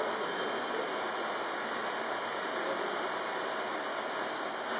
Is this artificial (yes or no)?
no